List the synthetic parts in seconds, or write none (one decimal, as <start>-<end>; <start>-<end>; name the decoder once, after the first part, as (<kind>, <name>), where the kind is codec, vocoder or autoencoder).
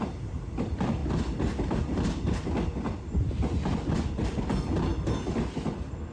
0.0-1.0 (vocoder, BigVGAN v2); 3.9-4.9